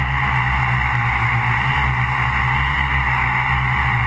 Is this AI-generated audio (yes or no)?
no